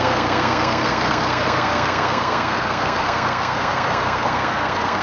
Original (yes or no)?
no